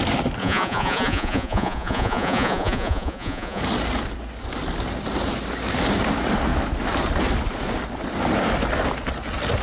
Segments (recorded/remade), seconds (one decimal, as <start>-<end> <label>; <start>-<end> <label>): 0.0-0.4 recorded; 0.4-3.6 remade; 3.6-9.6 recorded